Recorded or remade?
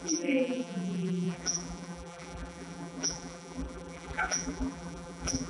remade